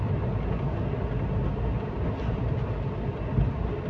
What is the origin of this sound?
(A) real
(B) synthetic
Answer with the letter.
A